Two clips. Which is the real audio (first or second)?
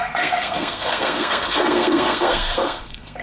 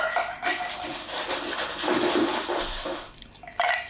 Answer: second